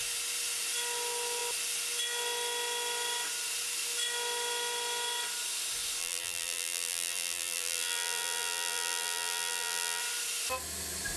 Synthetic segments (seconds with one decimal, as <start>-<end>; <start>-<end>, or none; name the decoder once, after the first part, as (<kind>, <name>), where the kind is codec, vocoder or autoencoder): 6.0-10.0 (vocoder, BigVGAN v2)

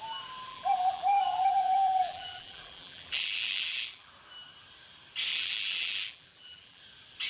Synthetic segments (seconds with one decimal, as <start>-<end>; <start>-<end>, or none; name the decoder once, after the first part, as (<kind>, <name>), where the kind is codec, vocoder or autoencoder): 0.5-4.1 (vocoder, BigVGAN v2); 5.3-6.8

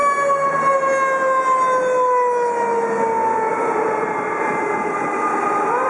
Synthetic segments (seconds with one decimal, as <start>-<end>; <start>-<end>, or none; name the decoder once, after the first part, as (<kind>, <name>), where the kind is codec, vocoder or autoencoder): 3.5-5.9 (vocoder, BigVGAN v2)

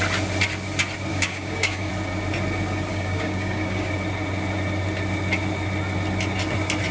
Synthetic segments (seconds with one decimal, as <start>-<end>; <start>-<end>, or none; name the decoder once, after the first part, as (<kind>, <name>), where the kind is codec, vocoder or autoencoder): 1.1-1.9 (codec, DAC); 2.9-3.9

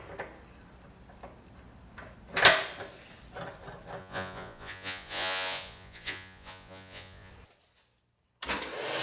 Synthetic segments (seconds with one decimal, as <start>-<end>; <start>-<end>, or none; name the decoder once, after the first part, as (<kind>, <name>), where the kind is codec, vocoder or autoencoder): 4.0-7.3 (vocoder, Vocos)